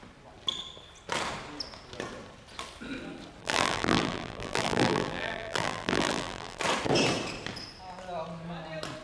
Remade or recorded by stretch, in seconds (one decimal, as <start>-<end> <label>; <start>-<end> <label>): 0.0-3.4 recorded; 3.4-6.6 remade; 6.6-9.0 recorded